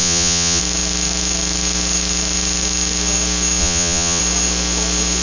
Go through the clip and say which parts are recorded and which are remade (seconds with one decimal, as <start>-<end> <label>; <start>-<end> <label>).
0.0-0.6 remade; 0.6-3.6 recorded; 3.6-4.2 remade; 4.2-5.2 recorded